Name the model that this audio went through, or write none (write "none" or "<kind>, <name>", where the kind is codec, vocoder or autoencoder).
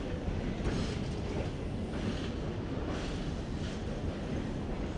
none